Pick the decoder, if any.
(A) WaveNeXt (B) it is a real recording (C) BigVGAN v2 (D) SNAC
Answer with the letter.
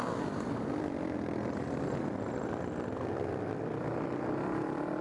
C